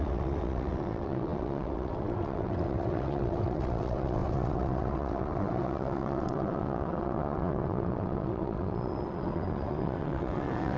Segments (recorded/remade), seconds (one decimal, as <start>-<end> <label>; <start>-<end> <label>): 0.0-10.8 remade